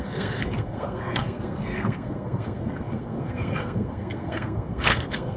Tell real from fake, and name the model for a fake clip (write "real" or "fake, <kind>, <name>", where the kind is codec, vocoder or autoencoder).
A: fake, codec, SNAC